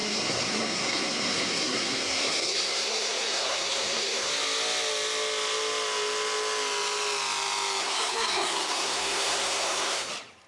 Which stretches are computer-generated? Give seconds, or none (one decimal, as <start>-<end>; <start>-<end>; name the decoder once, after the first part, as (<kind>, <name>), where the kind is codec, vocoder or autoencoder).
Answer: 0.0-4.3 (codec, SNAC); 7.8-10.1